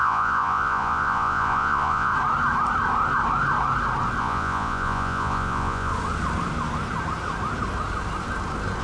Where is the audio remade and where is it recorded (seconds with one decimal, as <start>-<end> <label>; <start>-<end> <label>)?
0.0-2.1 remade; 2.1-4.2 recorded; 4.2-5.9 remade; 5.9-8.8 recorded